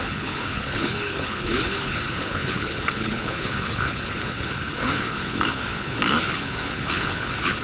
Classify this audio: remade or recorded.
remade